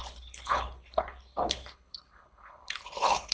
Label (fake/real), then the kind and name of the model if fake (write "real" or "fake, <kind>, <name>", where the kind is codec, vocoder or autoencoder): fake, codec, HILCodec